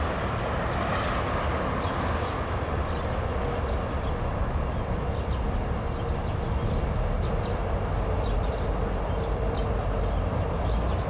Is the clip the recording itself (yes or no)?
yes